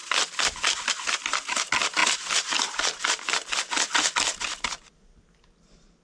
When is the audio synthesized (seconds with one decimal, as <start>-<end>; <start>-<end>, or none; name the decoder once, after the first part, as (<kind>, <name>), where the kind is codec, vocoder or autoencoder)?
none